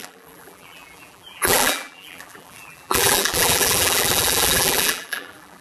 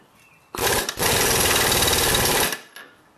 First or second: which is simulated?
first